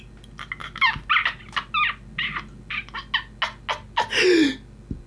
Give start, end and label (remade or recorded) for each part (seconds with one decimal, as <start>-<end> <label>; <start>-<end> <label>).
0.0-5.1 recorded